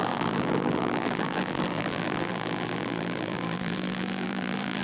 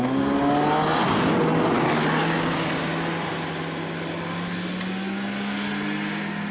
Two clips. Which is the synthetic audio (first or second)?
first